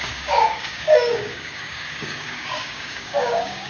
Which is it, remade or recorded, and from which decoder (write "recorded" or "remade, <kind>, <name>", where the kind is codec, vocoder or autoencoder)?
remade, codec, DAC